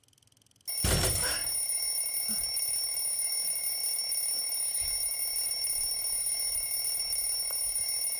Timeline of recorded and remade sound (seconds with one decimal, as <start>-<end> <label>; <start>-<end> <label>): 0.0-8.2 recorded